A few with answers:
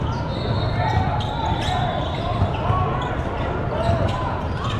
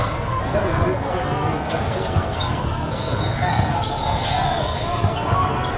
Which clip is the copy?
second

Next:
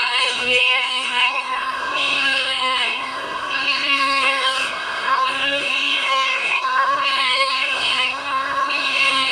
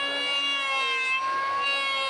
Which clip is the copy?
first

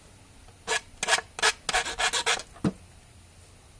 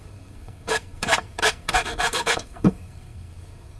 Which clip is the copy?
second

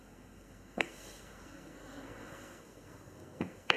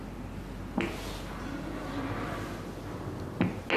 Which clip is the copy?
first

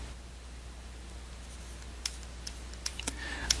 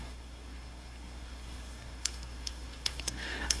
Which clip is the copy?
second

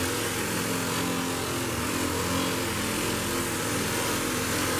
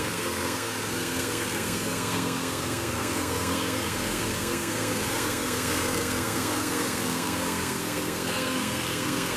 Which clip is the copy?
second